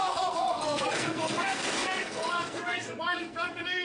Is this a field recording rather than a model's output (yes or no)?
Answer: no